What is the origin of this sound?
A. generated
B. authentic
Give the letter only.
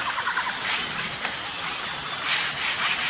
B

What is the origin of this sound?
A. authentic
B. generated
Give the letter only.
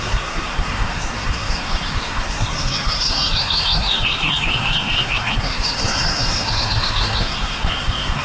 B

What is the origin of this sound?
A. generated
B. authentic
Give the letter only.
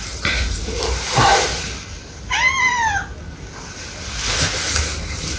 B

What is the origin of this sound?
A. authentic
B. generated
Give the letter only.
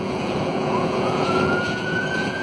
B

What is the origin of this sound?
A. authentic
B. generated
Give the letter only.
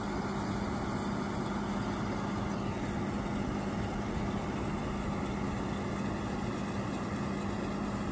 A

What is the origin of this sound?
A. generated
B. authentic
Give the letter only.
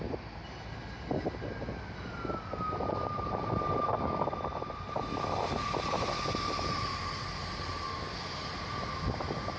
B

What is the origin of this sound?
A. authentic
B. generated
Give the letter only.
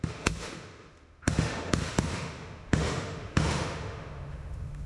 B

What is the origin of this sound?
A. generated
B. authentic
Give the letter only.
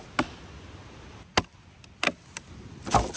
B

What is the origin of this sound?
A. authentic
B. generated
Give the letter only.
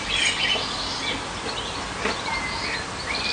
A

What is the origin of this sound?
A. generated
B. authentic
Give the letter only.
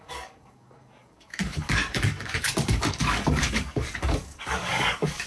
A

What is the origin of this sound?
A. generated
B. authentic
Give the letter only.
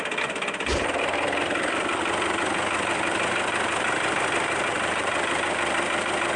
A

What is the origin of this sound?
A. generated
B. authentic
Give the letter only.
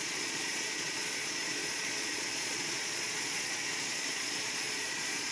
A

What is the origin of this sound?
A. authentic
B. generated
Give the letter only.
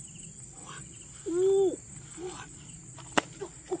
A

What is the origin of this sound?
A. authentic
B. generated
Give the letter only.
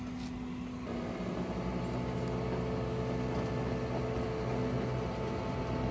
A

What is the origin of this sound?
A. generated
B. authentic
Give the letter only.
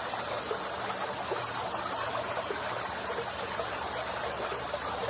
B